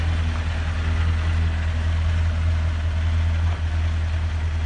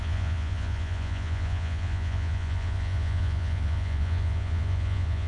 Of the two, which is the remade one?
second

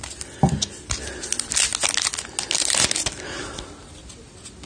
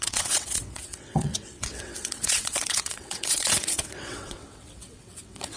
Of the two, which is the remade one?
second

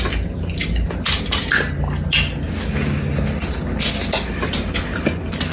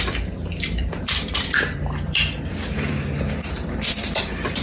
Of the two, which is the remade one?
second